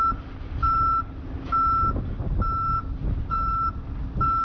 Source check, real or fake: real